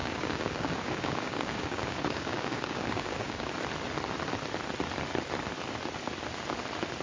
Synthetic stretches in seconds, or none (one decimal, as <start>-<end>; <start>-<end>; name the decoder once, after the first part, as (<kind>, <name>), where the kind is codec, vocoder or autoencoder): 0.0-3.5 (codec, DAC)